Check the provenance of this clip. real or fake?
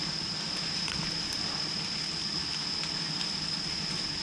real